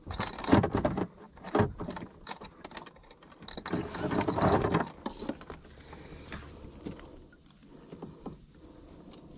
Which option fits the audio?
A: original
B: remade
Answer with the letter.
A